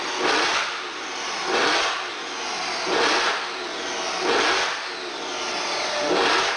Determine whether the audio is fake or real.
real